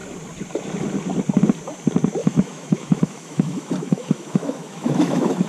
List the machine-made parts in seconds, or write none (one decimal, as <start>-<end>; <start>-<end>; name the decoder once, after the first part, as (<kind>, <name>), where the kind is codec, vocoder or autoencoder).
2.2-5.5 (autoencoder, DAC-VAE)